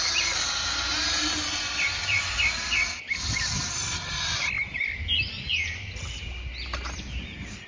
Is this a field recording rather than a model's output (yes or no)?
yes